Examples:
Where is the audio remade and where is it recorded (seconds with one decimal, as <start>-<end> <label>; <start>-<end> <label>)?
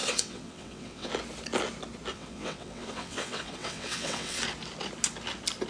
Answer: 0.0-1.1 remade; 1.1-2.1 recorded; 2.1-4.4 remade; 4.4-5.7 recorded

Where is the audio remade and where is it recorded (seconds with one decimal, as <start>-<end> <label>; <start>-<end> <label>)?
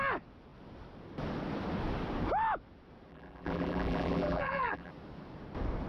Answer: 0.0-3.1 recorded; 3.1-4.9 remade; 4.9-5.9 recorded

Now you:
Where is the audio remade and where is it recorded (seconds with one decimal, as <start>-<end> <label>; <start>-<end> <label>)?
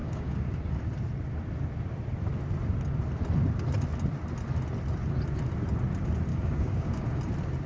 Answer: 0.0-0.5 remade; 0.5-6.3 recorded; 6.3-7.2 remade; 7.2-7.7 recorded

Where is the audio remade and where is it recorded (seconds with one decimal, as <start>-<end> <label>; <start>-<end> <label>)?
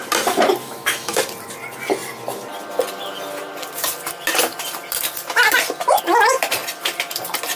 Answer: 0.0-0.6 recorded; 0.6-1.2 remade; 1.2-7.6 recorded